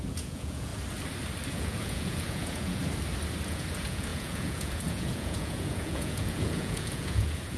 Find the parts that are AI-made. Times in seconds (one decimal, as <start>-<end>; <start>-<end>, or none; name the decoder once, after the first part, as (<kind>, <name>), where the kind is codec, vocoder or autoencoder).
0.0-0.7 (vocoder, Vocos); 1.5-2.8; 3.4-7.6